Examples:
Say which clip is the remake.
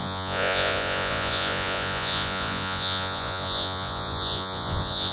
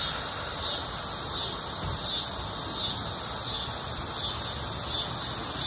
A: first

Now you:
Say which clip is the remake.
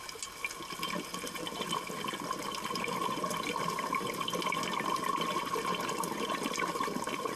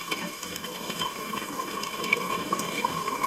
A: second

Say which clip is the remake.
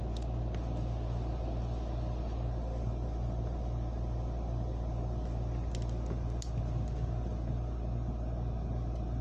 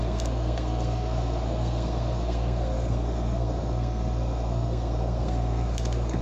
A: second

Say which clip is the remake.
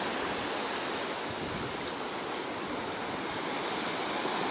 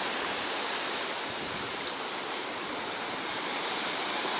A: second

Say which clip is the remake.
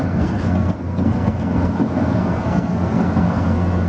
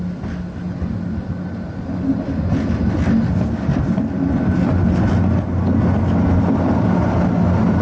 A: first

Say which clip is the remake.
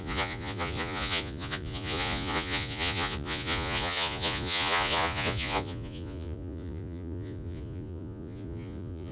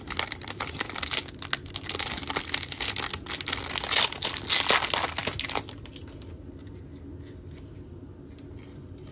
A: first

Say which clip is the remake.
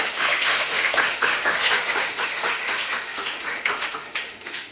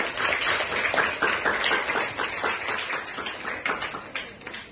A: first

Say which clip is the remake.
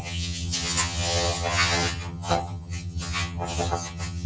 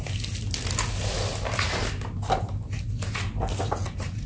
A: first